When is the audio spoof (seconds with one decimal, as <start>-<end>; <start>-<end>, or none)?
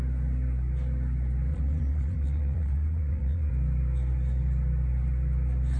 1.5-3.5